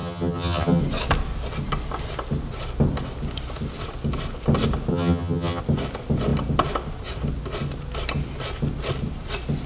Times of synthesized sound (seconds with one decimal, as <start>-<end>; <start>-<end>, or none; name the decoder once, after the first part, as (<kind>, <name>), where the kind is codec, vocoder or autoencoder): 0.0-0.8 (vocoder, HiFi-GAN); 4.9-5.6

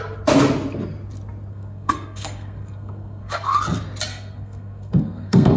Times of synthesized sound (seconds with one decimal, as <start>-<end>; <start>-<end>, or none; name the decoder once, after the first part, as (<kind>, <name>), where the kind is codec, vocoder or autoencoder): 1.5-3.6 (codec, SNAC); 4.1-5.6

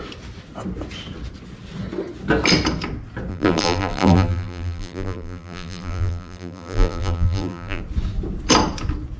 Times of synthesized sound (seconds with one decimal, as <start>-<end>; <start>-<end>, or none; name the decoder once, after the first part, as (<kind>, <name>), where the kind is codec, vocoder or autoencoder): 3.3-7.8 (vocoder, BigVGAN v2)